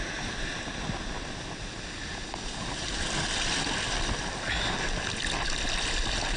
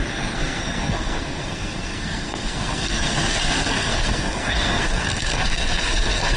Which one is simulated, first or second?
second